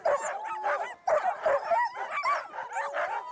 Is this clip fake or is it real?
real